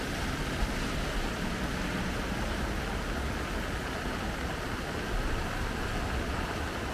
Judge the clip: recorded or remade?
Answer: recorded